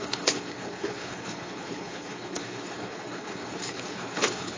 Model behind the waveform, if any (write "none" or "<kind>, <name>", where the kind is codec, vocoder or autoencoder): codec, HILCodec